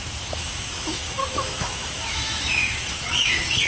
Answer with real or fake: fake